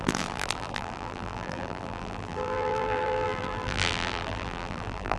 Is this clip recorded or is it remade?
remade